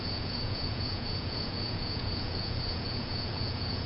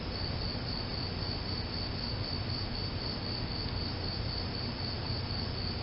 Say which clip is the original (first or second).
second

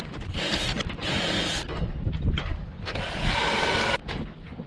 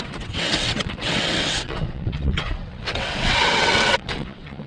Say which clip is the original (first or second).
first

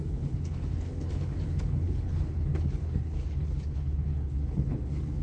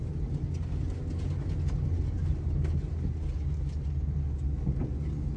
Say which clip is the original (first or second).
second